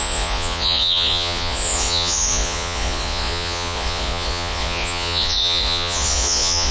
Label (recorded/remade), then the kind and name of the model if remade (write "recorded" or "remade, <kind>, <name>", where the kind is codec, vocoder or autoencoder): remade, vocoder, Vocos